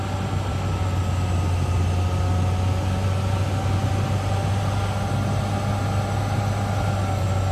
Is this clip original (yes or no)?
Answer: yes